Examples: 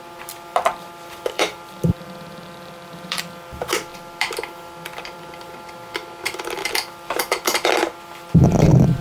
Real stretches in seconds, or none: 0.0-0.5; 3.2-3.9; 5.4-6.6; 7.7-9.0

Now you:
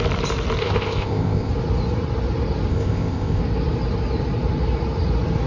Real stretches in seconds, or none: 0.0-0.6; 1.5-2.7; 3.4-5.5

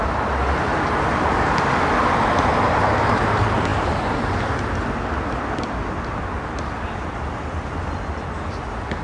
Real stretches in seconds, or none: 0.0-3.7; 4.2-9.0

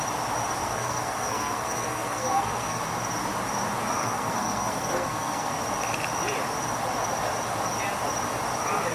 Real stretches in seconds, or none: 0.0-0.6; 2.8-4.0; 5.6-8.9